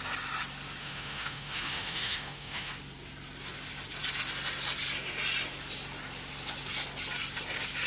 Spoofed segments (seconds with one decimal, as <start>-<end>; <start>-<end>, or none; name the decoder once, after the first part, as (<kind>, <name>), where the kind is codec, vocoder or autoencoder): 0.8-2.7 (autoencoder, DAC-VAE)